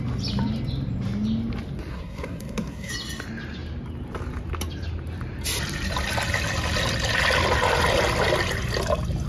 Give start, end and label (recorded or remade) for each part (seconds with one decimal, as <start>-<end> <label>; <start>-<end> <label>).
0.0-1.9 recorded; 1.9-2.9 remade; 2.9-9.3 recorded